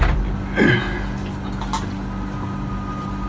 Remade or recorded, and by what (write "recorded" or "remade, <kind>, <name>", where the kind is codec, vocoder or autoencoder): recorded